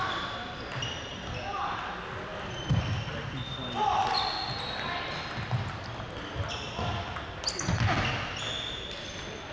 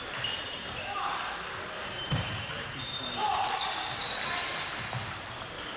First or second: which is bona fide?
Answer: first